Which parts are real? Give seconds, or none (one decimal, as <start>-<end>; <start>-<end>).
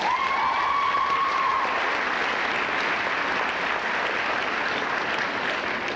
0.0-6.0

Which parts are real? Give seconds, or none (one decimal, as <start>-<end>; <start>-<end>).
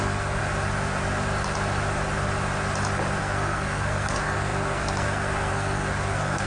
0.4-3.2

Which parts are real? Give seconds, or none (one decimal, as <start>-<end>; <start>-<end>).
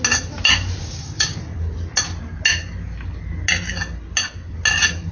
0.0-0.8; 1.4-5.1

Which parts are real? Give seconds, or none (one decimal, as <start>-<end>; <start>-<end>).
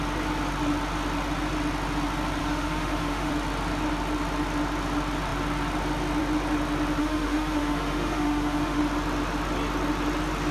0.0-2.4; 3.3-7.0; 8.8-10.5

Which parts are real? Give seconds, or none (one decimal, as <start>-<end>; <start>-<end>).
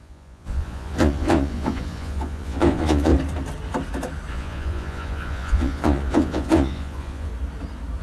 3.1-4.3; 7.3-8.0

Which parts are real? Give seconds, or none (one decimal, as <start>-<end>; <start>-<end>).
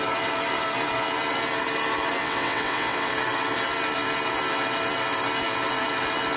0.0-2.2; 3.1-6.4